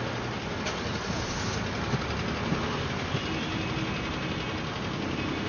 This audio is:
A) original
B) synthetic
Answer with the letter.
A